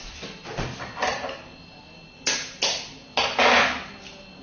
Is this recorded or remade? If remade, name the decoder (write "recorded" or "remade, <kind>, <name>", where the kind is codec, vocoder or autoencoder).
recorded